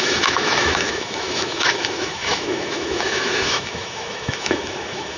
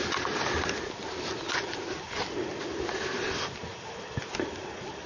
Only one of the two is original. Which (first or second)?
second